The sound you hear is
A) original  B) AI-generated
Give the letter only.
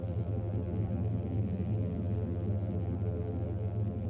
B